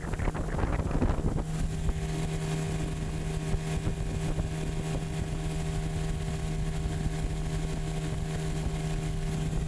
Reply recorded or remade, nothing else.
recorded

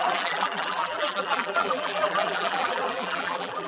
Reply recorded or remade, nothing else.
remade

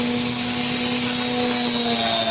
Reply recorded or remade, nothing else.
recorded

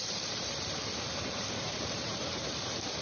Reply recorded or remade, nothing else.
remade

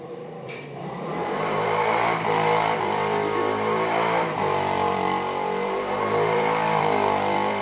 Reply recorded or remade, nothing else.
remade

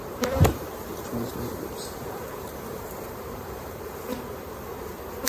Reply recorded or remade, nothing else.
remade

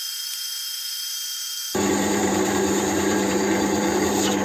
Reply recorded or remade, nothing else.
remade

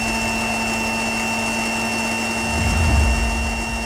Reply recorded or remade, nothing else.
recorded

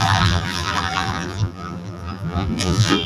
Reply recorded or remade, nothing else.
remade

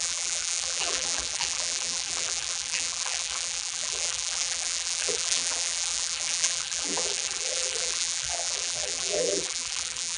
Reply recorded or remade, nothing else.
remade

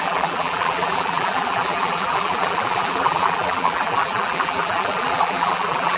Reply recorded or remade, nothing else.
remade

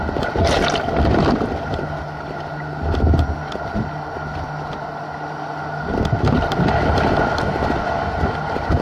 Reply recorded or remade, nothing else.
recorded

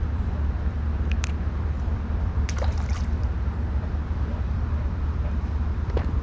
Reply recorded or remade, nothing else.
remade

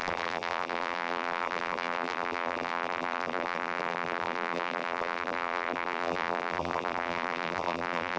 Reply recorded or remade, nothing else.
remade